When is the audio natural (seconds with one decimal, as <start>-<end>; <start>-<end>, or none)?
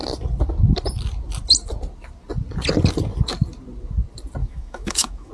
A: 0.0-4.4